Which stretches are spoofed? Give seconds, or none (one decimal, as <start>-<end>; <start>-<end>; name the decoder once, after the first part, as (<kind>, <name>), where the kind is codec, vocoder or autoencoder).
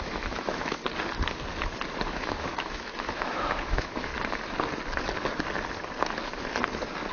0.0-0.8 (autoencoder, DAC-VAE); 2.1-4.1